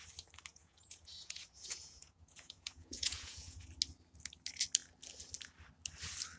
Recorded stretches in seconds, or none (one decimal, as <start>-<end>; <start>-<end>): 0.0-0.5; 3.6-6.4